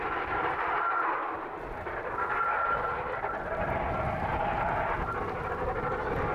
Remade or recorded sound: recorded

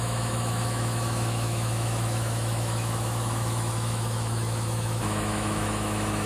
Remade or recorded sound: remade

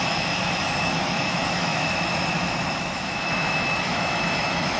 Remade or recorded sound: remade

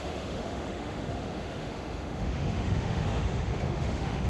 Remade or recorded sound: remade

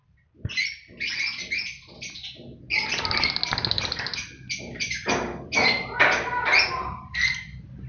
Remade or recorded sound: recorded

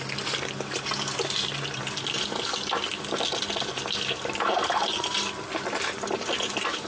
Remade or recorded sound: recorded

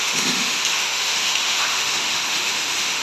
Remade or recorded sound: remade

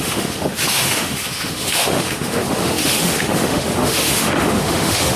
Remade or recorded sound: remade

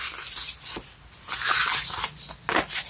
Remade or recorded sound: recorded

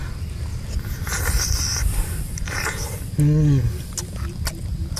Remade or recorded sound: recorded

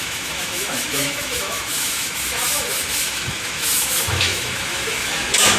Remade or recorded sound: remade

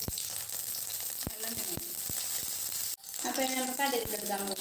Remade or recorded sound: recorded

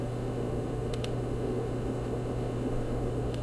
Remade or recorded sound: remade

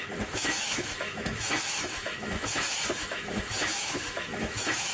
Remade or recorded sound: remade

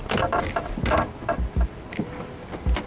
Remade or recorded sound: recorded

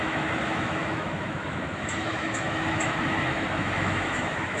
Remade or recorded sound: remade